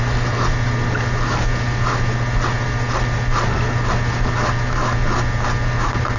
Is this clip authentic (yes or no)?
yes